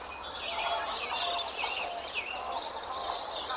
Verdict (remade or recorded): recorded